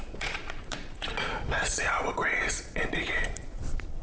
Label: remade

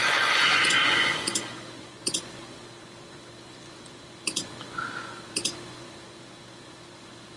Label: remade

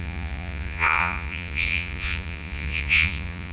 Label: remade